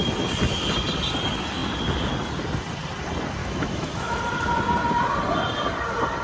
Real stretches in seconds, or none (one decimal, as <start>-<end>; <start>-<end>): 0.0-3.4; 4.2-6.2